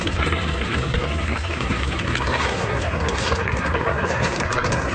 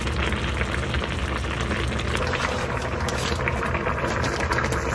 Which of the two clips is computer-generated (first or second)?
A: first